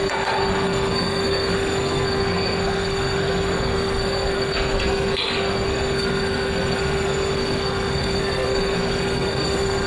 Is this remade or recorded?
remade